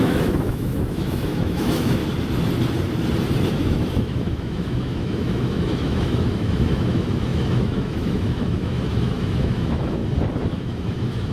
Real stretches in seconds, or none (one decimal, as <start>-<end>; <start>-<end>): 2.0-3.5; 10.0-10.5